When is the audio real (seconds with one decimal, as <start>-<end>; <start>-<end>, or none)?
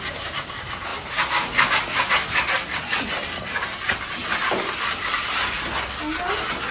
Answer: 0.0-4.2; 5.3-6.7